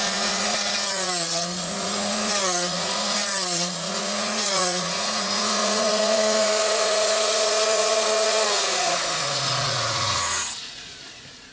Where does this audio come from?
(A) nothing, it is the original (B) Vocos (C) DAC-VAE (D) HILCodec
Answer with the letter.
B